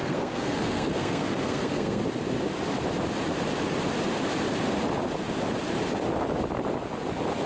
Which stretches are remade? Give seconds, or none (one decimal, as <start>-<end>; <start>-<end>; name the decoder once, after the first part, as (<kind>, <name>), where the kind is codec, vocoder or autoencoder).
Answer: 0.0-2.0 (codec, SNAC)